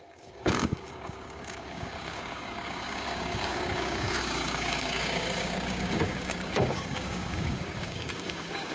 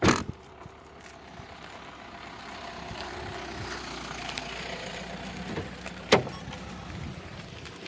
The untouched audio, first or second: second